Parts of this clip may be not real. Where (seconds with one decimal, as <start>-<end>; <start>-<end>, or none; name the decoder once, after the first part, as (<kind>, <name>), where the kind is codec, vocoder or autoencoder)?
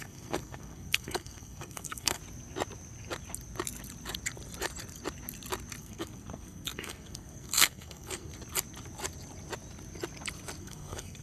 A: 0.0-2.2 (codec, SNAC); 5.8-8.3; 10.6-11.2